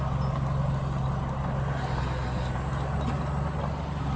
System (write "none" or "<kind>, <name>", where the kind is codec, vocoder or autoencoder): none